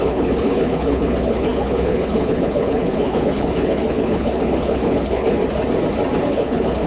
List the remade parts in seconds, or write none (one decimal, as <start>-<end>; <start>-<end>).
0.0-5.4; 6.2-6.9